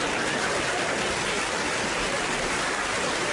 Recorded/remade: recorded